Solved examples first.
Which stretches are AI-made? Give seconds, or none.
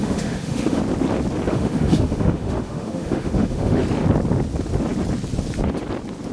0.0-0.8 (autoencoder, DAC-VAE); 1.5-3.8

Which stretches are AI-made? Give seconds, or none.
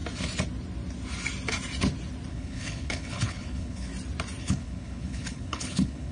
2.3-3.9 (codec, HILCodec); 4.4-6.1